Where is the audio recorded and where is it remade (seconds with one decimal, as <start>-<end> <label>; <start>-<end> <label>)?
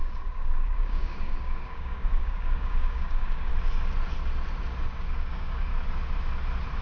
0.0-3.5 remade; 3.5-5.0 recorded; 5.0-5.7 remade; 5.7-6.8 recorded